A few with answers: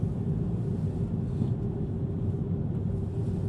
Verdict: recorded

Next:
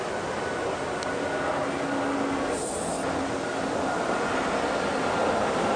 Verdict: recorded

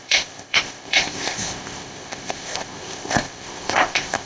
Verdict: remade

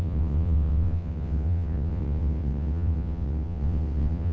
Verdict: remade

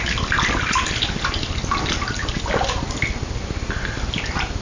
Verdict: recorded